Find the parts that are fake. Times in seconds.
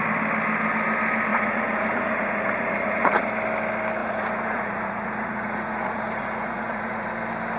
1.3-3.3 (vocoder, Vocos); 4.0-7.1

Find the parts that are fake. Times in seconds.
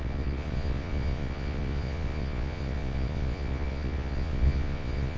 0.0-5.2 (vocoder, Vocos)